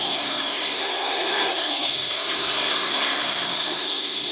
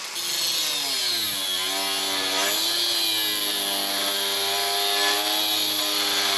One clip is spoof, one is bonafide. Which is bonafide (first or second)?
second